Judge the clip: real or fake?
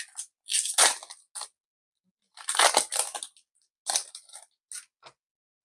real